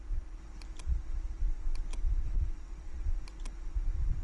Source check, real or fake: fake